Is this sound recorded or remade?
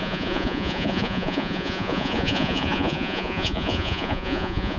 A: remade